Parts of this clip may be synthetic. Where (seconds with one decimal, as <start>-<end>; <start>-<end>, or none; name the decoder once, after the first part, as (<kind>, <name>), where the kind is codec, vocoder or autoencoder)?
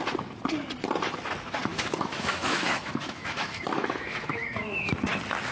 1.7-4.9 (autoencoder, DAC-VAE)